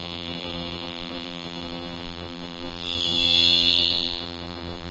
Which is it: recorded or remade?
remade